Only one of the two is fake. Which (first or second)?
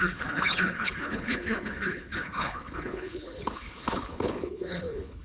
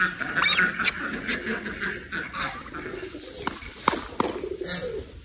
first